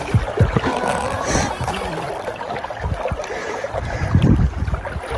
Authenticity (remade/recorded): recorded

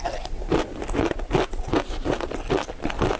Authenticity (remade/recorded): recorded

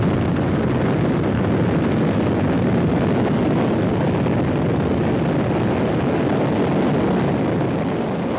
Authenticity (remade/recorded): recorded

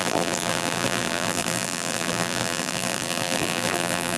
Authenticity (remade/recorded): remade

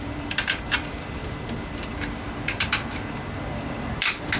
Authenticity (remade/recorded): remade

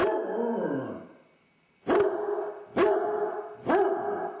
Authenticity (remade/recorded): recorded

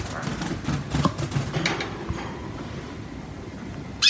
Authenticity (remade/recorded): recorded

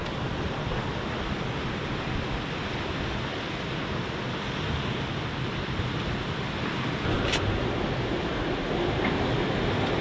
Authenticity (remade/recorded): recorded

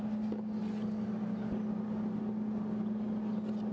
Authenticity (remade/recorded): recorded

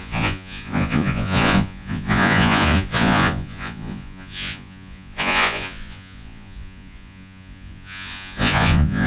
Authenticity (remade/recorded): remade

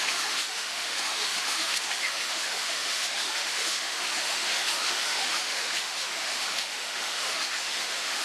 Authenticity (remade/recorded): remade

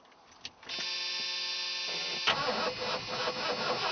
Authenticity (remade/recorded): recorded